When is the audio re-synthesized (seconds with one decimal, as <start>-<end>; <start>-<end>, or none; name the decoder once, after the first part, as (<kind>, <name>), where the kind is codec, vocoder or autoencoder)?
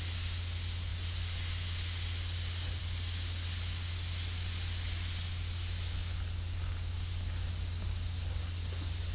none